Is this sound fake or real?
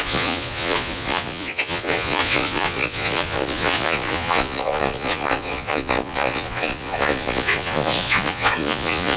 fake